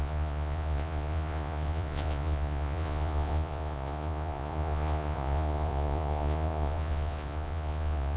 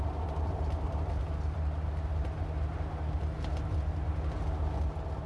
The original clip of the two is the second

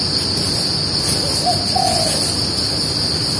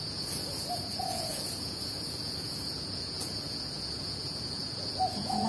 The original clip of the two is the first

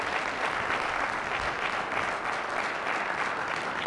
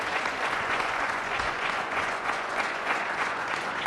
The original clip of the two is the first